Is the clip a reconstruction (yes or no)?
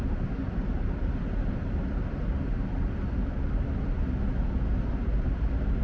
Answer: no